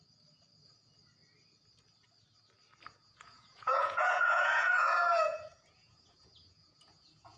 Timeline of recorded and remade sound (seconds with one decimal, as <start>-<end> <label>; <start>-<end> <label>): 0.0-2.9 recorded; 2.9-7.4 remade